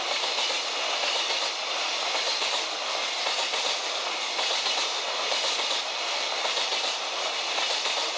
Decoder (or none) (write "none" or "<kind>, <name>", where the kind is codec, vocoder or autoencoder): vocoder, BigVGAN v2